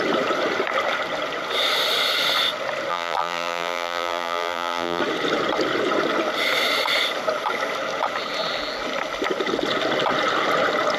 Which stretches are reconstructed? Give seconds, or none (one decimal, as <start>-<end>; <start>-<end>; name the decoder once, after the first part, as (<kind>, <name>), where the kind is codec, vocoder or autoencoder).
2.9-5.0 (vocoder, BigVGAN v2)